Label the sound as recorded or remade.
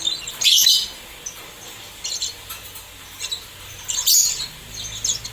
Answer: recorded